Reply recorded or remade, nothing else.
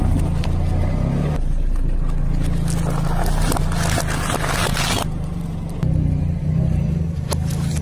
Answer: recorded